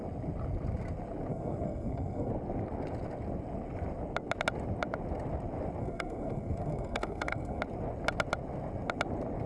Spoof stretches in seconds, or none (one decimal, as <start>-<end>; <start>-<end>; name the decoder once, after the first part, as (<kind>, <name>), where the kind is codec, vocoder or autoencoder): 1.3-2.3 (codec, SNAC); 5.8-7.6